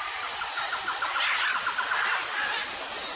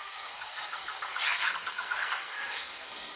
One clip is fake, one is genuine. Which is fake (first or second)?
second